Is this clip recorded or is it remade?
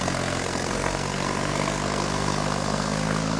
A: remade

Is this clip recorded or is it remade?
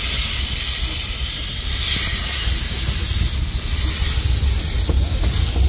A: recorded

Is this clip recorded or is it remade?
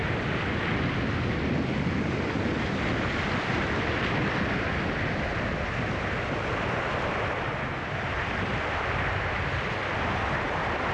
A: recorded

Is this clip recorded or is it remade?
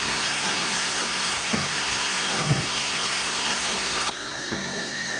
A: remade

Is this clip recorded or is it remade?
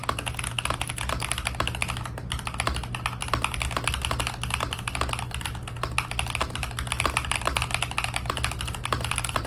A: recorded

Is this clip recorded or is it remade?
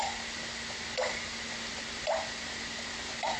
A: recorded